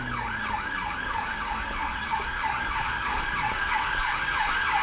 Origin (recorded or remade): remade